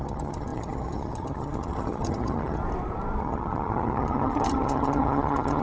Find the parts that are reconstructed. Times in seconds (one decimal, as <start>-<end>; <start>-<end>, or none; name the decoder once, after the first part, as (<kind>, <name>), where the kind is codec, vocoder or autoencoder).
0.0-2.6 (vocoder, HiFi-GAN); 3.2-5.6